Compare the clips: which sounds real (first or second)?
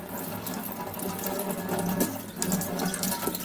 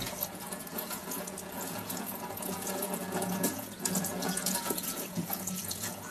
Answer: first